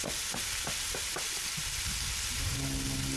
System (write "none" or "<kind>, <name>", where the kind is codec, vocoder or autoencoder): none